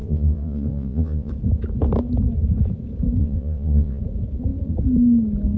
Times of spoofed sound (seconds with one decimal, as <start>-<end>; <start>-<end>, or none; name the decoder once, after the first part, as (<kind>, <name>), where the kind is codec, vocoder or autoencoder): 0.0-1.3 (vocoder, WaveNeXt); 3.2-4.0